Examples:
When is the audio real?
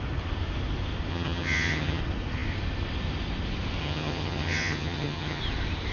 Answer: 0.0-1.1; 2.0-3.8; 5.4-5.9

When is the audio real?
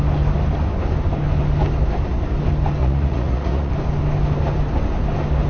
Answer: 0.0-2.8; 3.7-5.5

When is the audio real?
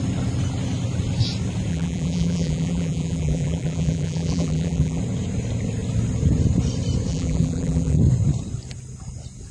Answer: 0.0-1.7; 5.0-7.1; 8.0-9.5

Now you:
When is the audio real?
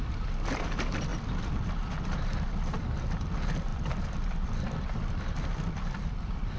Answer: 1.1-1.7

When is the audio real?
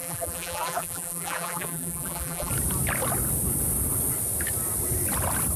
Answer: 2.5-5.6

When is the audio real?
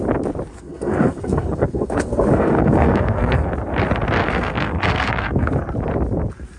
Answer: 0.0-0.5; 3.5-4.2; 5.6-6.6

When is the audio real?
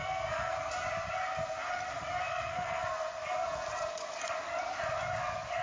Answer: 0.7-2.3; 2.9-5.6